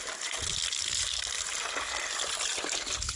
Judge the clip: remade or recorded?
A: recorded